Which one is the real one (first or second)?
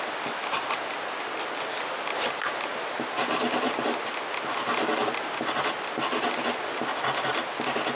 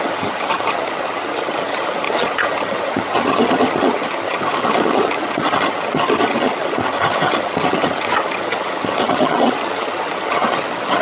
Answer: first